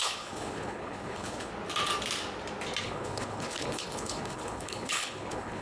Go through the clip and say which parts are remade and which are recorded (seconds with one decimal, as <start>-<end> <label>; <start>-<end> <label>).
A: 0.0-1.5 remade; 1.5-2.8 recorded; 2.8-5.6 remade